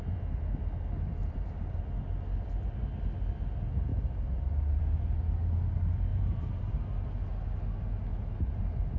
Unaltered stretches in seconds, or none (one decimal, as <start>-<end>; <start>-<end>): 0.0-1.2; 1.8-3.9; 4.8-6.1; 6.7-8.1; 8.6-9.0